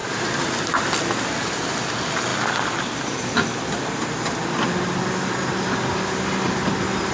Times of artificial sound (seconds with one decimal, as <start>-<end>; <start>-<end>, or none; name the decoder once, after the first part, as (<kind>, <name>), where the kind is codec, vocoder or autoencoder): 0.0-0.8 (vocoder, BigVGAN v2)